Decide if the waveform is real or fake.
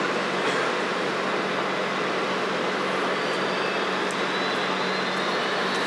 real